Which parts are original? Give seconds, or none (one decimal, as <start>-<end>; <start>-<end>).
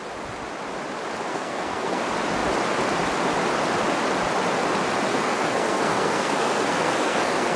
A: 0.0-1.3; 2.0-5.1